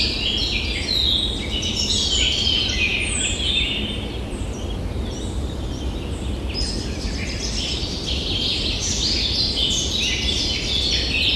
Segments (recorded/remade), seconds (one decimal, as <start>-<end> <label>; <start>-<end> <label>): 0.0-11.4 recorded